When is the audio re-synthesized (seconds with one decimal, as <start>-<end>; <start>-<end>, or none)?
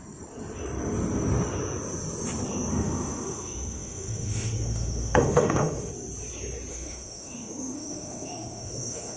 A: 2.7-5.9; 6.7-9.2